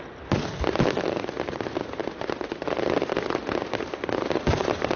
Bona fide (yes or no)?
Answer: yes